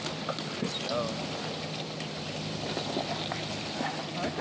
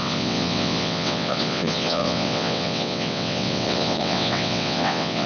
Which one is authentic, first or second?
first